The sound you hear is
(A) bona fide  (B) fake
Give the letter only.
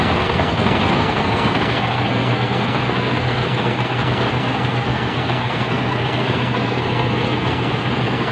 B